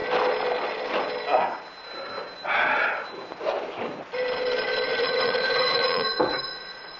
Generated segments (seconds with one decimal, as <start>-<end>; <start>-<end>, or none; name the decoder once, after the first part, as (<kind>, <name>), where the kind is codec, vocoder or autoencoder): 4.9-7.0 (vocoder, Vocos)